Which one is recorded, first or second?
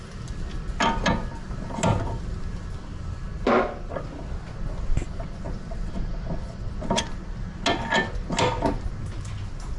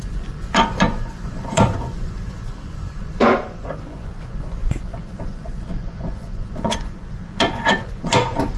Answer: first